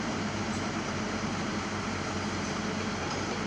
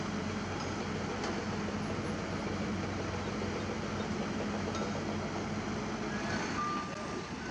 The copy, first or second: first